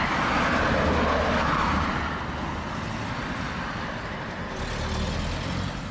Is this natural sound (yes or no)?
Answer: yes